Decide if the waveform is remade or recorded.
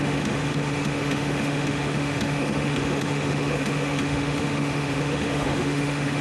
remade